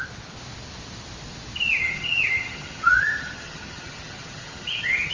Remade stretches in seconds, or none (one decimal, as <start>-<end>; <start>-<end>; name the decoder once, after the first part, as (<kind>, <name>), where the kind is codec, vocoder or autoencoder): 1.8-5.1 (vocoder, HiFi-GAN)